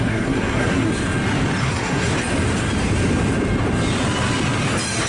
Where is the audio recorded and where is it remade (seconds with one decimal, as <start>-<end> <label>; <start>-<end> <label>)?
0.0-0.9 remade; 0.9-1.6 recorded; 1.6-2.1 remade; 2.1-5.1 recorded